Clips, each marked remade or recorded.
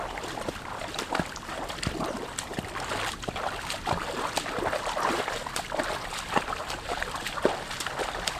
recorded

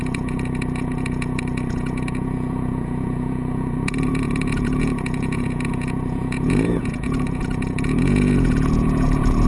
remade